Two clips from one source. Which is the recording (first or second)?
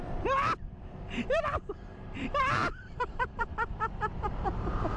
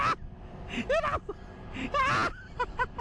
second